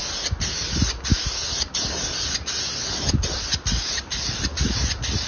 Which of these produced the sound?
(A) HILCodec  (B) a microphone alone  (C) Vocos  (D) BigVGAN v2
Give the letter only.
B